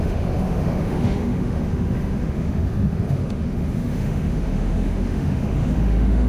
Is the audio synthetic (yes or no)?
yes